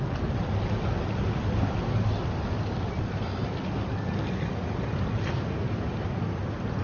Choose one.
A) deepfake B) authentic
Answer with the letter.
B